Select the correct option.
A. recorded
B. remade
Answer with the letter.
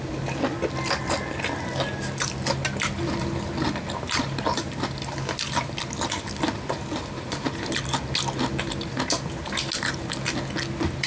A